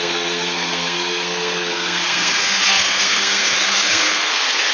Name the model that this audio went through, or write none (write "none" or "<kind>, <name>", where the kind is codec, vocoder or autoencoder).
codec, SNAC